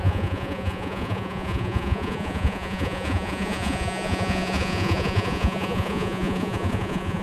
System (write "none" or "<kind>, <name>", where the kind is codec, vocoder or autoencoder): vocoder, Vocos